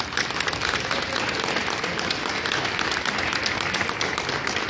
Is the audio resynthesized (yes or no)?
no